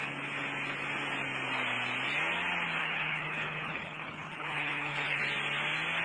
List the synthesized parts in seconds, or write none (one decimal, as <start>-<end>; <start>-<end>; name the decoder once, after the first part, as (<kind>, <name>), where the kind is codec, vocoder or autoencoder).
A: 2.8-5.2 (codec, HILCodec)